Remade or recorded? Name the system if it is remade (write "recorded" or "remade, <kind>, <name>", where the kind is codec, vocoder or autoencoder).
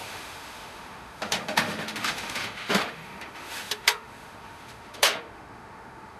remade, autoencoder, DAC-VAE